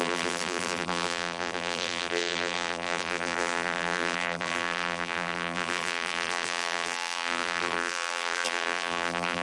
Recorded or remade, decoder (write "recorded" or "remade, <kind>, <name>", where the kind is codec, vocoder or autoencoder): remade, vocoder, BigVGAN v2